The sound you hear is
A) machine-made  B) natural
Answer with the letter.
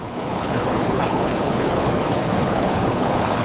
A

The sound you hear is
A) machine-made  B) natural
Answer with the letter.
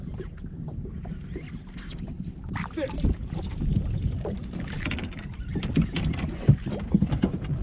B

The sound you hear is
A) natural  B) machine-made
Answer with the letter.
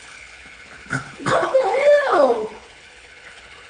B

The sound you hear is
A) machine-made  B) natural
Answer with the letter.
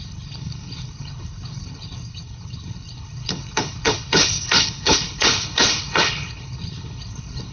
A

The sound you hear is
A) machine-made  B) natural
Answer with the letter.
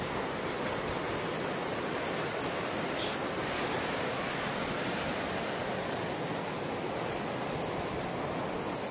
B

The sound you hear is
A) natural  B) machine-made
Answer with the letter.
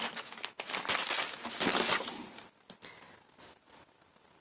A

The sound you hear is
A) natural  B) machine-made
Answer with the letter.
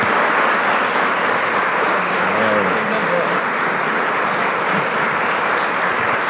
A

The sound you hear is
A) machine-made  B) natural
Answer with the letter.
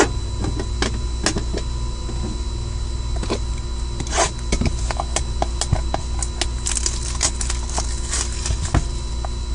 B